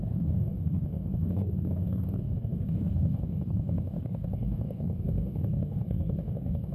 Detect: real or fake fake